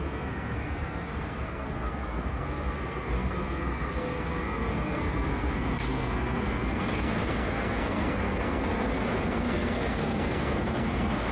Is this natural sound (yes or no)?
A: no